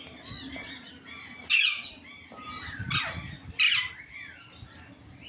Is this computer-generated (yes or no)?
no